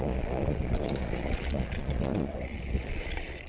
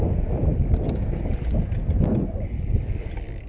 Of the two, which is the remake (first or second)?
first